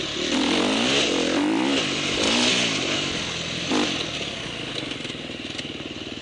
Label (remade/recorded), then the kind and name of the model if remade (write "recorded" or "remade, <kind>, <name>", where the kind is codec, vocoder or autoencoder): recorded